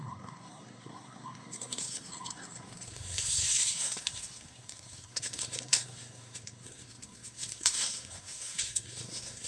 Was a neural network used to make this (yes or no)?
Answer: yes